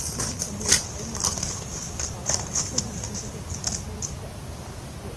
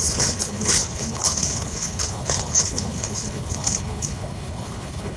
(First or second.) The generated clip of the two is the second